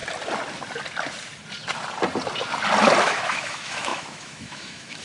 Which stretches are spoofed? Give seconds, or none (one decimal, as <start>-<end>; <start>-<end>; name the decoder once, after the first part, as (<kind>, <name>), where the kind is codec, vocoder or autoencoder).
3.0-5.0 (autoencoder, DAC-VAE)